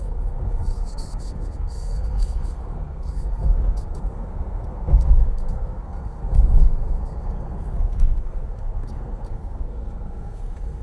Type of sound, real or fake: fake